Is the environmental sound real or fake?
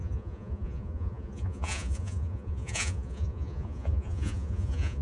fake